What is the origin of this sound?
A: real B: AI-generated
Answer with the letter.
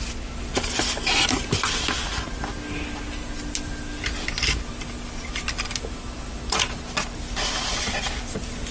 A